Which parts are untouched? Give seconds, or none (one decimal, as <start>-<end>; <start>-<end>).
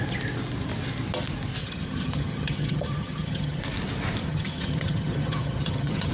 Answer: 0.0-1.6; 3.6-4.2